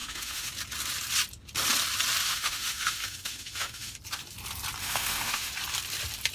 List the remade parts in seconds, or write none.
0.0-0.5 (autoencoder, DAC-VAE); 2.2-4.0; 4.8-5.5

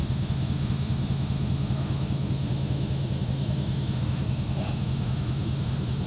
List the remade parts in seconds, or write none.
0.0-6.1 (autoencoder, DAC-VAE)

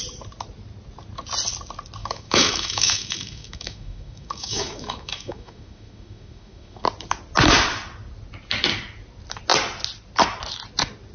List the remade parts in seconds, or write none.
2.0-6.8 (autoencoder, DAC-VAE)

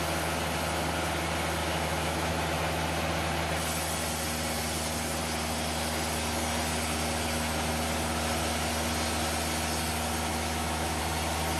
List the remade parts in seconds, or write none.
1.6-2.3 (autoencoder, DAC-VAE); 10.3-11.0

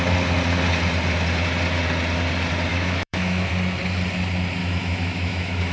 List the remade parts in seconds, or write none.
2.7-3.5 (autoencoder, DAC-VAE); 4.6-5.7

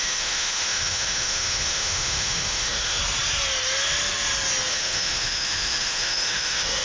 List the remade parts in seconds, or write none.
0.0-3.0 (autoencoder, DAC-VAE); 4.7-6.8

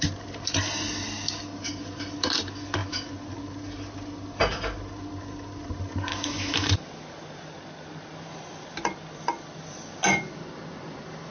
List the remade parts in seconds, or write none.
6.1-6.7 (autoencoder, DAC-VAE)